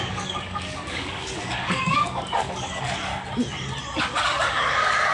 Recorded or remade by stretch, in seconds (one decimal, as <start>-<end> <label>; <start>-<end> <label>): 0.0-3.1 remade; 3.1-4.0 recorded; 4.0-5.1 remade